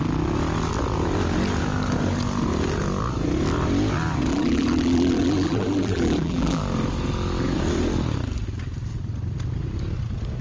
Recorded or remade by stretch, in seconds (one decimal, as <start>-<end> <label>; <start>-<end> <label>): 0.0-4.3 recorded; 4.3-6.6 remade; 6.6-10.4 recorded